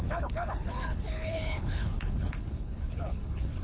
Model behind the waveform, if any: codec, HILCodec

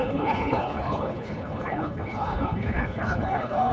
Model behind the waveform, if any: codec, HILCodec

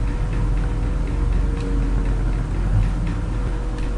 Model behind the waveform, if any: none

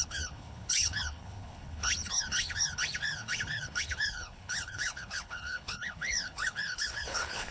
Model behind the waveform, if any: codec, HILCodec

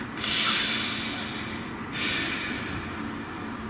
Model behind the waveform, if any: none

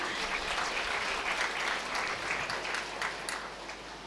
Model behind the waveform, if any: none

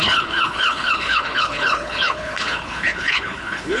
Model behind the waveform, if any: codec, HILCodec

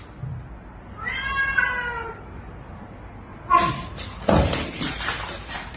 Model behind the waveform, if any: none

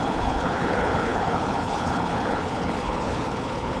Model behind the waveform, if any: codec, HILCodec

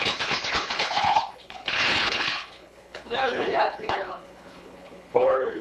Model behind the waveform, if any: codec, HILCodec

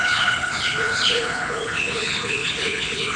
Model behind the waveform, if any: codec, HILCodec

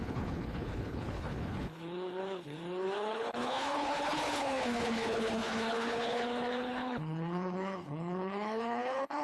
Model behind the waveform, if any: codec, HILCodec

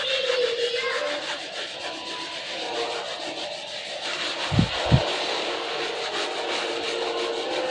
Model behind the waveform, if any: none